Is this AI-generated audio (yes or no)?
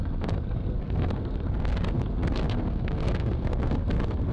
yes